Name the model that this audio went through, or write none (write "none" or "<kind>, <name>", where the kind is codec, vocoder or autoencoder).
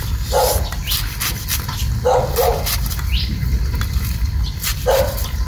none